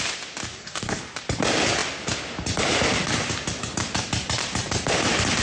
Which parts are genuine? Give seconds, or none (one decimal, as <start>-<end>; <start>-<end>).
0.0-0.5; 1.0-5.4